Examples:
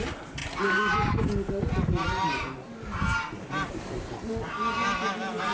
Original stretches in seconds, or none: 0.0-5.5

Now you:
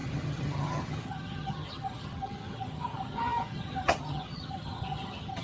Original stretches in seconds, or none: none

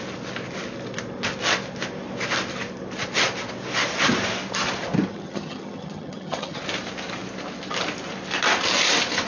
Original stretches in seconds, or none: 0.0-5.1; 6.6-9.3

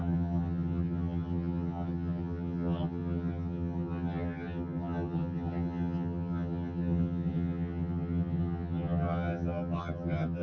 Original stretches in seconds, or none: none

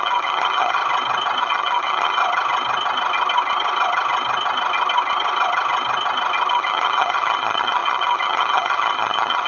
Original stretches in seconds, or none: 0.8-1.4; 2.2-6.5